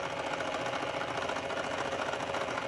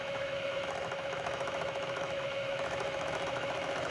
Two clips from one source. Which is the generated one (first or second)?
second